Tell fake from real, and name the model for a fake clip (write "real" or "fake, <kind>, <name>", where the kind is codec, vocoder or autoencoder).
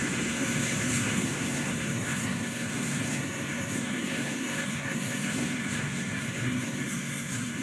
fake, codec, SNAC